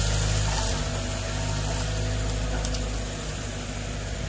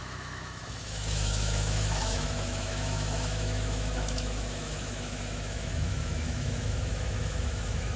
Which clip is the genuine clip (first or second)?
first